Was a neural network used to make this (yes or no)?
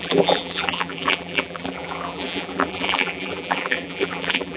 yes